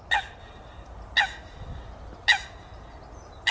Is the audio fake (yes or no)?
no